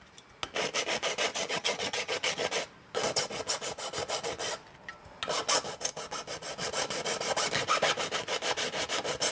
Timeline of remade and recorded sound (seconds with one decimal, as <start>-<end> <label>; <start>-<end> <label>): 0.0-1.3 recorded; 1.3-2.5 remade; 2.5-9.3 recorded